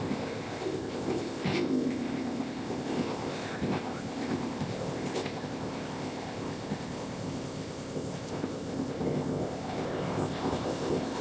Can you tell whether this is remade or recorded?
remade